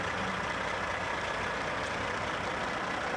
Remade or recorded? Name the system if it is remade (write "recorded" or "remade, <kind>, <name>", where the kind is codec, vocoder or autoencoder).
recorded